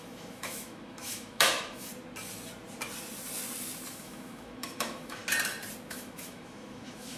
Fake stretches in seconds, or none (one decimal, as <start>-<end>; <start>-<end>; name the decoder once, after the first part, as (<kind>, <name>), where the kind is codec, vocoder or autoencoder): 0.0-1.9 (autoencoder, DAC-VAE); 3.9-5.2; 5.9-7.2